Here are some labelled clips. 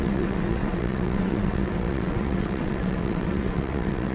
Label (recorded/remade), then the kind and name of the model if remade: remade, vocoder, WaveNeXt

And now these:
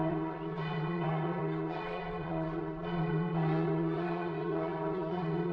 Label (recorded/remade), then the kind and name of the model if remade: remade, vocoder, WaveNeXt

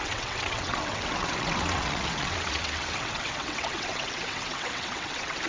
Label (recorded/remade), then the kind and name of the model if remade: remade, vocoder, WaveNeXt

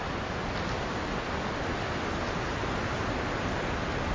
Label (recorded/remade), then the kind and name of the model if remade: recorded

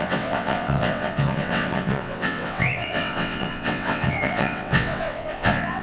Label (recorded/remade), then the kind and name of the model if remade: remade, vocoder, WaveNeXt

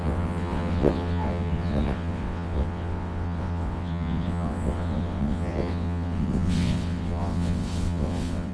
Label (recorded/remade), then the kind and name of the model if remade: remade, vocoder, WaveNeXt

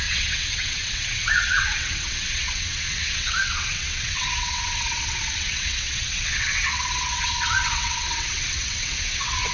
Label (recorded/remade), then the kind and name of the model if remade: remade, vocoder, WaveNeXt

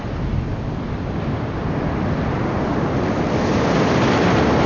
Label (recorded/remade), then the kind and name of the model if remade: recorded